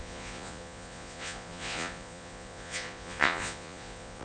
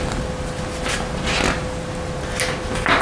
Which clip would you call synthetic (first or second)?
first